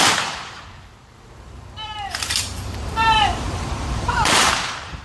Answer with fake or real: fake